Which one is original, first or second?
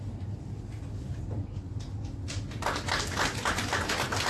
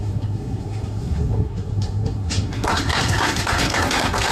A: first